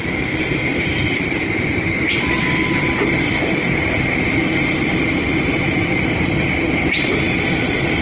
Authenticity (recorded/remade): remade